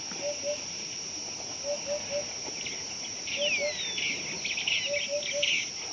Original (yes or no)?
yes